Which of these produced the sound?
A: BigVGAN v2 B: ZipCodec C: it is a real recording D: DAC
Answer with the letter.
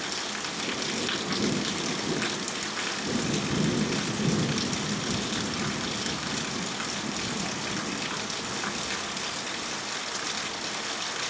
C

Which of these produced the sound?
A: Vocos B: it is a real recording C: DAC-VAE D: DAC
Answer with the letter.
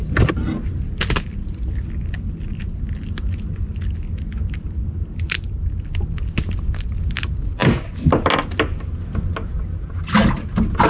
B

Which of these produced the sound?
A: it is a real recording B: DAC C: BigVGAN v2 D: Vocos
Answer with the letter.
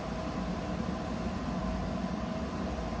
A